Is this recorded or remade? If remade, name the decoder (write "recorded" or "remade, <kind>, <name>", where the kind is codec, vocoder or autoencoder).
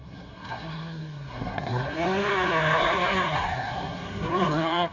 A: remade, codec, SNAC